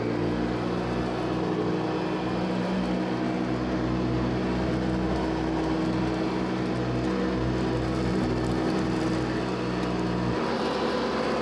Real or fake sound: real